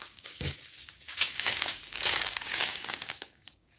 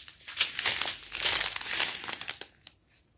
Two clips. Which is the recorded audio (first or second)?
second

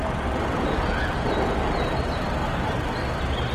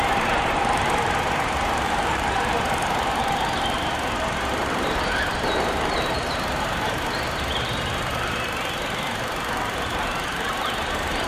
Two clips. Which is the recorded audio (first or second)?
first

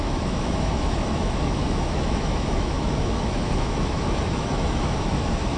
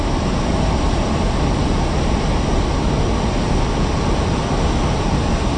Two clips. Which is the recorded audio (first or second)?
second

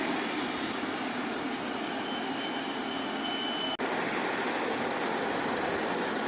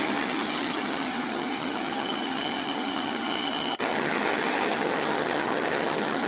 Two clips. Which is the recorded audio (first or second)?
first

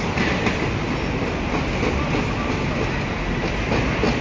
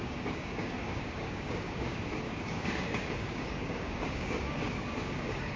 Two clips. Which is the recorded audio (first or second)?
first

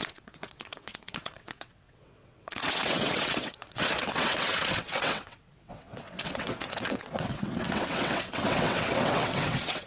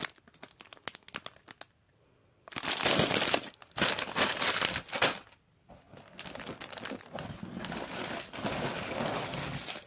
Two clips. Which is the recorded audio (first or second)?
second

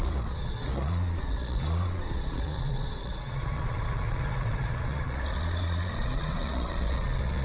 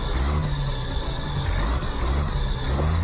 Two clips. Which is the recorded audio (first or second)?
second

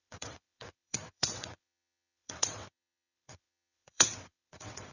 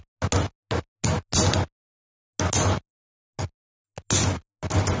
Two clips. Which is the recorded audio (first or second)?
second